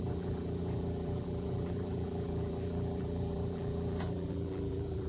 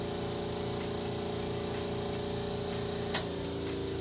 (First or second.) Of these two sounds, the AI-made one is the first